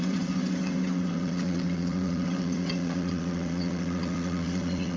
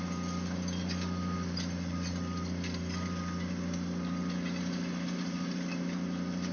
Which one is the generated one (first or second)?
first